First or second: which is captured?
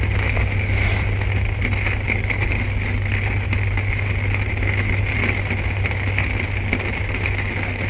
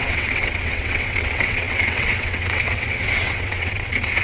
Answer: first